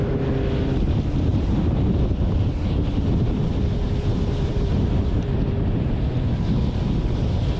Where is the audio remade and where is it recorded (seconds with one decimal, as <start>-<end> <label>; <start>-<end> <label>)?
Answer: 0.0-1.3 recorded; 1.3-1.9 remade; 1.9-4.1 recorded; 4.1-5.4 remade; 5.4-7.6 recorded